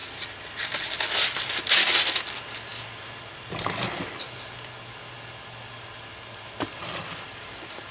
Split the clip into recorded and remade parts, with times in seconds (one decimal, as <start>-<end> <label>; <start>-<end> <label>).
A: 0.0-1.0 remade; 1.0-7.9 recorded